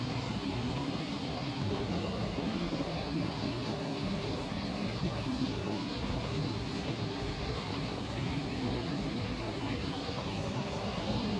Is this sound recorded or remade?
remade